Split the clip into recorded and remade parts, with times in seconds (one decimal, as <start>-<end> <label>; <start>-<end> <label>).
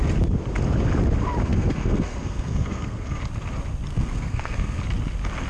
0.0-1.4 recorded; 1.4-3.2 remade; 3.2-3.9 recorded; 3.9-4.8 remade; 4.8-5.5 recorded